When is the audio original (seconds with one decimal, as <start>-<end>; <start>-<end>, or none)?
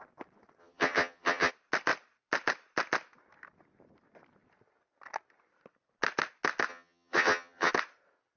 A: 0.0-0.6; 1.5-6.7; 7.7-8.4